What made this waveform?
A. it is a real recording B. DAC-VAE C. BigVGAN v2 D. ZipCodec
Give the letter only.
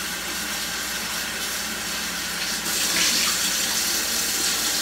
A